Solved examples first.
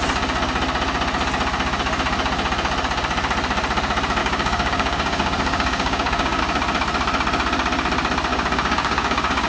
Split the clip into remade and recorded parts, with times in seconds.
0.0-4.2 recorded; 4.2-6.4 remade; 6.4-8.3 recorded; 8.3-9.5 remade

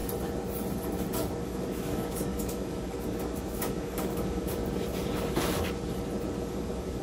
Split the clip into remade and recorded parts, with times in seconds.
0.0-1.4 recorded; 1.4-4.6 remade; 4.6-6.4 recorded; 6.4-7.0 remade

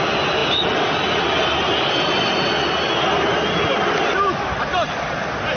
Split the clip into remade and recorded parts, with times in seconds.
0.0-5.6 recorded

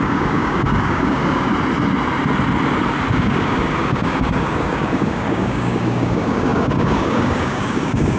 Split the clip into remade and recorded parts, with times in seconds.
0.0-1.5 remade; 1.5-3.1 recorded; 3.1-8.2 remade

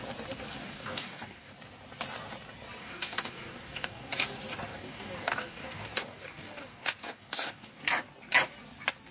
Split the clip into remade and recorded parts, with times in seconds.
0.0-0.6 recorded; 0.6-1.5 remade; 1.5-2.8 recorded; 2.8-4.1 remade; 4.1-4.7 recorded; 4.7-7.8 remade; 7.8-9.1 recorded